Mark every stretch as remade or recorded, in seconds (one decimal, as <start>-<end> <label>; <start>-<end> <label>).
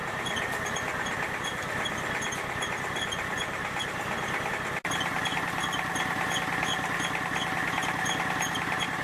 0.0-9.0 recorded